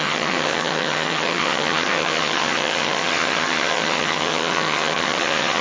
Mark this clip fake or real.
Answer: fake